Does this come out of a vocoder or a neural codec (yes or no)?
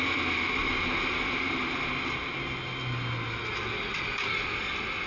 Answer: no